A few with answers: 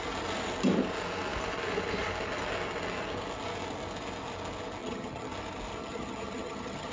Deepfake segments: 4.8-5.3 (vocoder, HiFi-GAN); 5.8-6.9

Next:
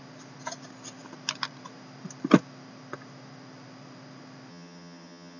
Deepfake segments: 4.5-5.4 (vocoder, HiFi-GAN)

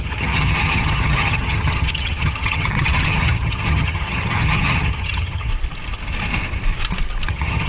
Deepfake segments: 0.0-5.5 (vocoder, HiFi-GAN); 7.3-7.7